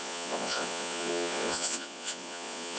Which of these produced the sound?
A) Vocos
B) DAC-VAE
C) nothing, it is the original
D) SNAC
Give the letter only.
A